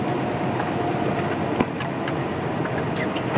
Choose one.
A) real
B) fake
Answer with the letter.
A